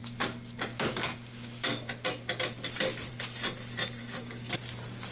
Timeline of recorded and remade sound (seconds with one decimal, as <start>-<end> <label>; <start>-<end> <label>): 0.0-4.0 recorded; 4.0-4.5 remade; 4.5-5.1 recorded